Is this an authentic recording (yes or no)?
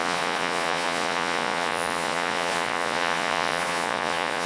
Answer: no